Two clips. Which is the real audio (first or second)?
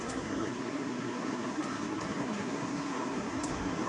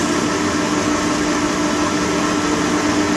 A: second